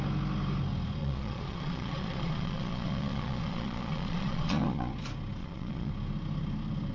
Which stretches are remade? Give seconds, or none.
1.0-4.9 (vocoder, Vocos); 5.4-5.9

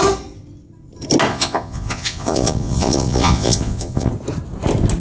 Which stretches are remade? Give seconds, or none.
1.3-4.1 (vocoder, Vocos)

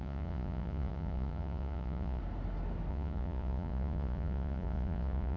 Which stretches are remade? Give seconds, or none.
0.0-2.2 (vocoder, Vocos); 2.9-5.4

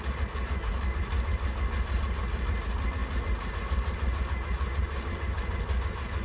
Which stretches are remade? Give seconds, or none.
none

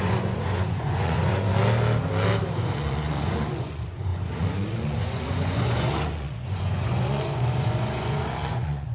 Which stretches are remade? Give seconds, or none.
0.0-1.5 (vocoder, Vocos); 2.5-8.9